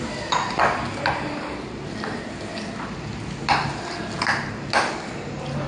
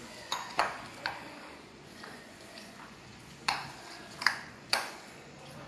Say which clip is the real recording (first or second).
first